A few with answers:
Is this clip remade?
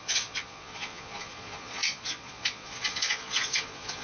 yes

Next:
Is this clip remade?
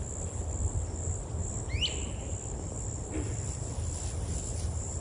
no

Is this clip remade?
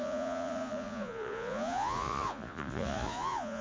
yes